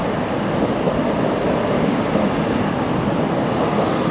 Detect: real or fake real